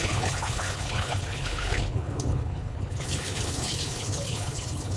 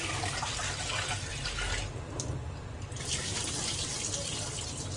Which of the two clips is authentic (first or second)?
second